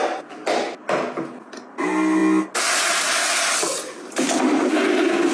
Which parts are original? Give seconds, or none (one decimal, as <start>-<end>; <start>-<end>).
0.0-5.3